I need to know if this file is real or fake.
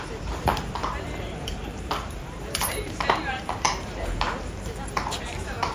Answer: fake